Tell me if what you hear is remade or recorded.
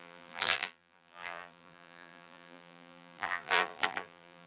remade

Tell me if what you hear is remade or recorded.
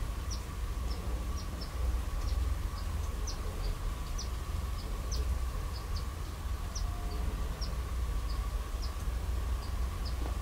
recorded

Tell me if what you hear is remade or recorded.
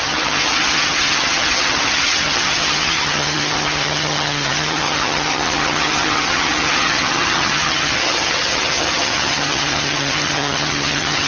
remade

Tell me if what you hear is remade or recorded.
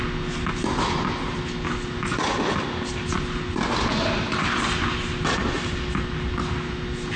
recorded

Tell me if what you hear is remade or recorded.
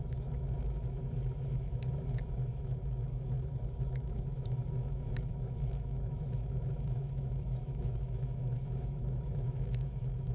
remade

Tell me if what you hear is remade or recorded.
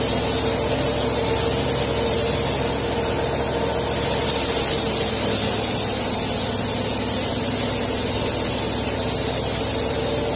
recorded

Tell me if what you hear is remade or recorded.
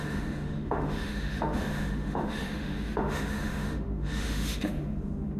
remade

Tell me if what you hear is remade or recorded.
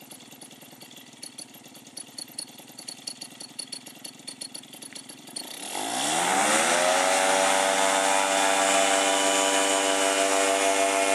recorded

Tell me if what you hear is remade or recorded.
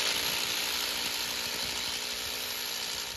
recorded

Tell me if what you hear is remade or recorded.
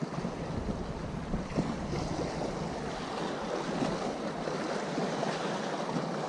recorded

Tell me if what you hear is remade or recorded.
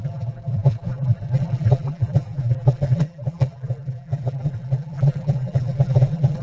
remade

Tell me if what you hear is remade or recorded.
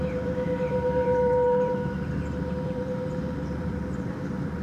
remade